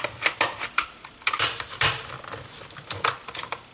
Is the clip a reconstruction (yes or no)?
yes